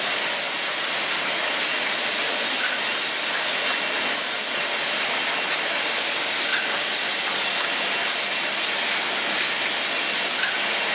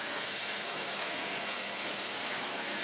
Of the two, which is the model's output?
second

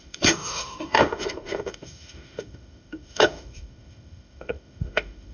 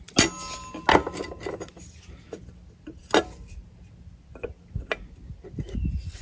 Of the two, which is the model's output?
first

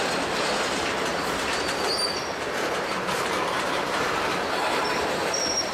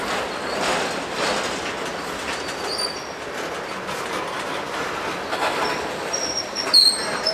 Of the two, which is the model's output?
first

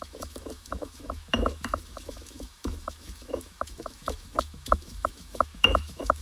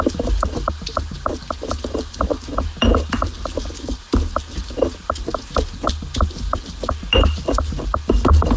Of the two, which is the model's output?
first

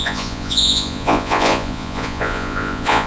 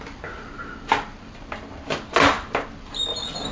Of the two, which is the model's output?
first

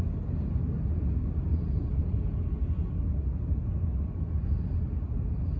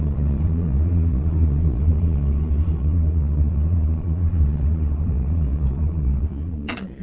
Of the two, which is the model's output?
second